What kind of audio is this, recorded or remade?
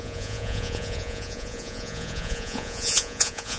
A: remade